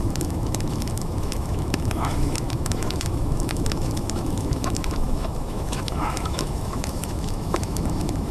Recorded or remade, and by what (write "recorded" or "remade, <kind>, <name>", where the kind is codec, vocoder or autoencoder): remade, autoencoder, DAC-VAE